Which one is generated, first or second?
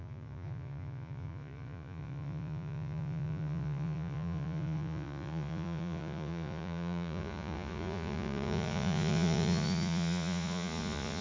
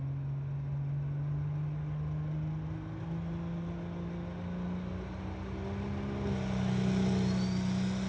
first